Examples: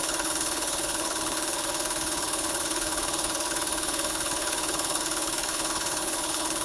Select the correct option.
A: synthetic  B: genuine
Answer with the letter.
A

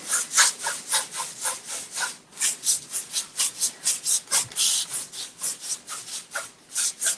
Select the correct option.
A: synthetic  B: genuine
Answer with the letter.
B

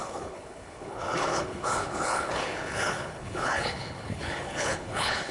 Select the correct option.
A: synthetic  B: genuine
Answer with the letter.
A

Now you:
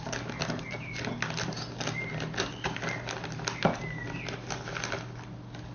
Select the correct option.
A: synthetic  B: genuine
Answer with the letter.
B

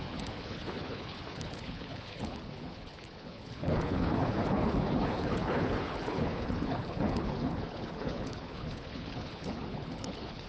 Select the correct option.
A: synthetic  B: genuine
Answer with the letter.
A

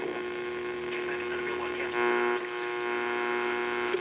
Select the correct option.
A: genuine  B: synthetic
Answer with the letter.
A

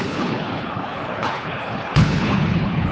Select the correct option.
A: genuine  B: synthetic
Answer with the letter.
B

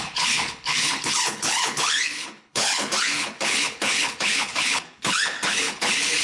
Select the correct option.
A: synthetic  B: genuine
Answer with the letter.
A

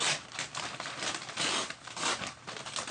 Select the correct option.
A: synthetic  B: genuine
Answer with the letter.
B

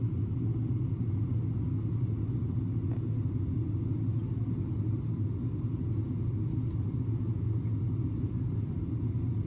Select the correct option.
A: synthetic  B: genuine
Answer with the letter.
B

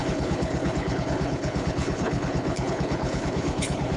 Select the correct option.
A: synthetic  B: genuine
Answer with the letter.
A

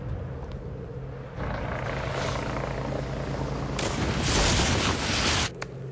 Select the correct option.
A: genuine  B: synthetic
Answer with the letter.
A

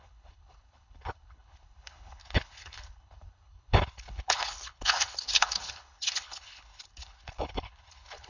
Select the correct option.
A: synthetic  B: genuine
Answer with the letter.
A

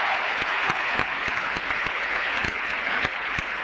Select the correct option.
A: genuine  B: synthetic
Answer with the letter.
B